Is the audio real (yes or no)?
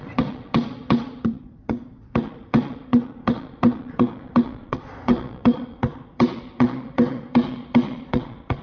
no